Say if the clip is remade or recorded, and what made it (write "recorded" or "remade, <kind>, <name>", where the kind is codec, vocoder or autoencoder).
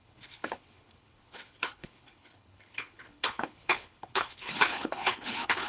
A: remade, codec, HILCodec